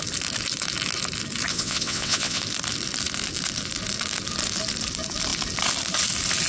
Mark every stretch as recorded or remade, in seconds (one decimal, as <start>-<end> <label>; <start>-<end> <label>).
0.0-1.5 recorded; 1.5-2.4 remade; 2.4-6.5 recorded